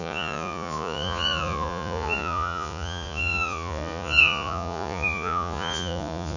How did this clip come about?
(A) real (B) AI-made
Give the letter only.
B